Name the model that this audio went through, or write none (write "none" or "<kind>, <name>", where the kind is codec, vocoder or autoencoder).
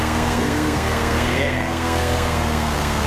codec, SNAC